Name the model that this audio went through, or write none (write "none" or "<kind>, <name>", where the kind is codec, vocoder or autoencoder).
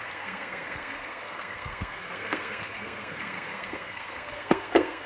codec, SNAC